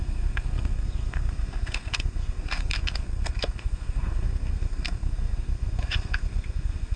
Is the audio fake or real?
fake